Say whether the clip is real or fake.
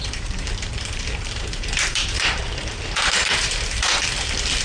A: fake